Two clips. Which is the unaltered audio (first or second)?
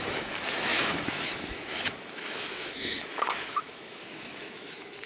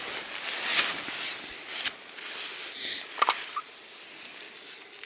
second